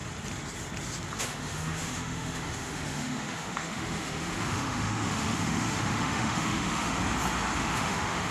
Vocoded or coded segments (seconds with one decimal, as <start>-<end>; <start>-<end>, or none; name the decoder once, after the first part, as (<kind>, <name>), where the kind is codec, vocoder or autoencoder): 1.2-7.0 (autoencoder, DAC-VAE); 7.6-8.3